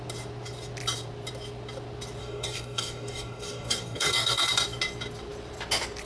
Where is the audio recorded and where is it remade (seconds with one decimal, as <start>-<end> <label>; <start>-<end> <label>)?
0.0-2.2 recorded; 2.2-4.5 remade; 4.5-6.1 recorded